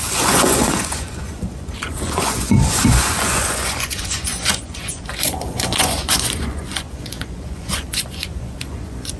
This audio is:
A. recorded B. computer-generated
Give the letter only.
B